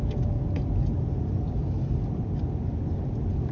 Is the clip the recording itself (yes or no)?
yes